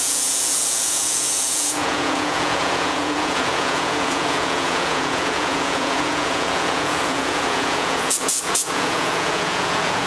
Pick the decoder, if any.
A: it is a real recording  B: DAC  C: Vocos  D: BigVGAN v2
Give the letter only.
C